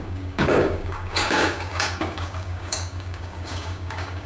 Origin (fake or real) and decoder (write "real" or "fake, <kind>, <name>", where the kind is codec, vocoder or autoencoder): fake, codec, DAC